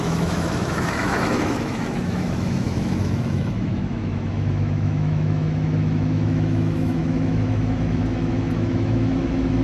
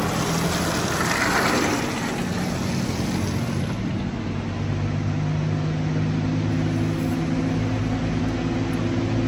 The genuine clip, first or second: second